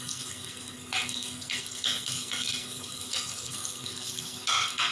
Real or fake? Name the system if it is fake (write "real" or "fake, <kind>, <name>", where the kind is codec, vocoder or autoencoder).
fake, codec, SNAC